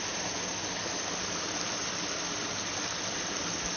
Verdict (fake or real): real